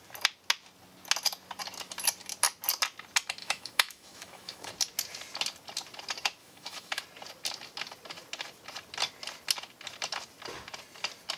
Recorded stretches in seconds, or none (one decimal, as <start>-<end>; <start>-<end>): 0.0-3.4; 4.7-6.4; 7.0-11.4